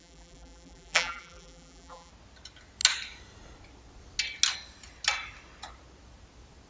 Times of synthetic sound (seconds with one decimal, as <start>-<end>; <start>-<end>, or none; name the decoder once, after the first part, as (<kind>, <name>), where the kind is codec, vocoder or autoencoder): 0.0-2.1 (vocoder, BigVGAN v2)